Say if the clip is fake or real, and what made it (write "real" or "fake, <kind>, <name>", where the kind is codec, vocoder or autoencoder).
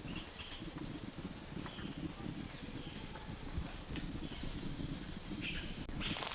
real